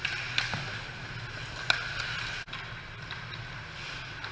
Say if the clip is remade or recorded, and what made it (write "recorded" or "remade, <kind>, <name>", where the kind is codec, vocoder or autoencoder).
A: recorded